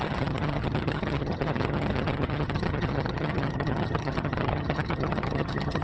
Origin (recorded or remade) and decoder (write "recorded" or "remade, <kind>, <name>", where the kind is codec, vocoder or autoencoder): remade, vocoder, HiFi-GAN